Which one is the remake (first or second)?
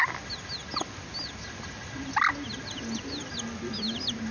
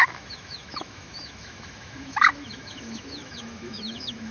second